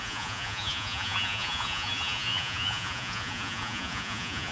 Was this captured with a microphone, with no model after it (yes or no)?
no